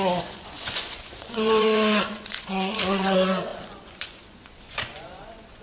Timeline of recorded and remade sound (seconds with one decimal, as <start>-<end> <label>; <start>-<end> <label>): 0.0-5.6 remade